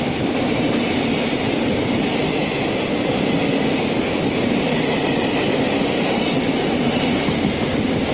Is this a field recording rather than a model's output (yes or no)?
yes